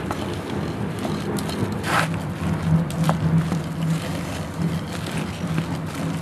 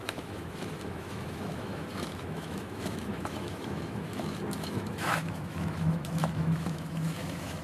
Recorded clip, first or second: first